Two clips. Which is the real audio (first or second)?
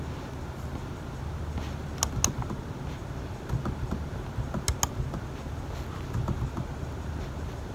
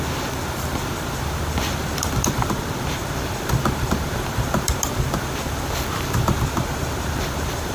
first